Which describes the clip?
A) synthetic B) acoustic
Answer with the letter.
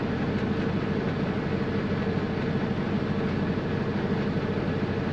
B